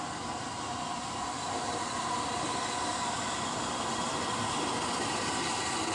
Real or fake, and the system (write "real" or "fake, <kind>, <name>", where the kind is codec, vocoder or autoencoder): real